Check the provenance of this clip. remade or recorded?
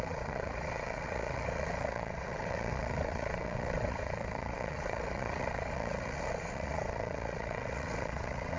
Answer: remade